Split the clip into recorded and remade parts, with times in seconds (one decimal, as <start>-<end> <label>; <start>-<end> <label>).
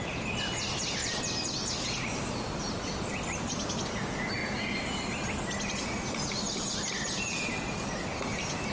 0.0-8.7 recorded